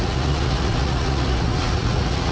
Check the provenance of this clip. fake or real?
fake